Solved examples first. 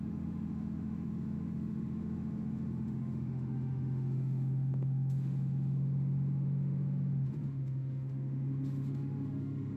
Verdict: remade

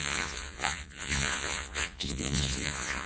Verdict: remade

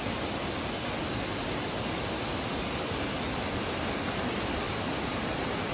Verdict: recorded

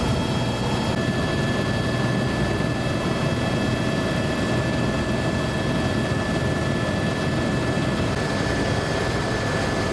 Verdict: recorded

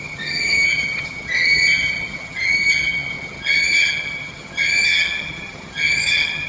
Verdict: remade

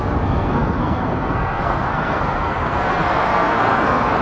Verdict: remade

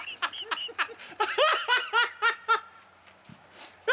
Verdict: recorded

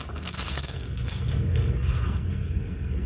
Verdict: remade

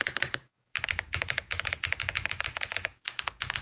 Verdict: remade